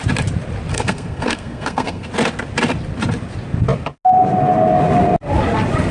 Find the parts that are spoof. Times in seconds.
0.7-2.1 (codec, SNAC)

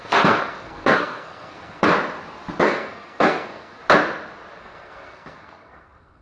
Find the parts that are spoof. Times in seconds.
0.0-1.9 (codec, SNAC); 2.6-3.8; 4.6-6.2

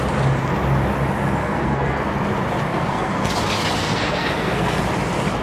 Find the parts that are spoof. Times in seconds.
1.4-2.1 (codec, SNAC); 2.7-3.3; 3.8-4.8

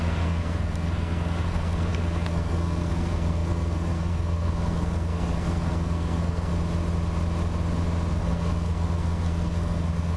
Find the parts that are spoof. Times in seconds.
0.0-6.5 (codec, SNAC); 8.2-10.2